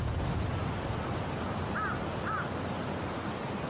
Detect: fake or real real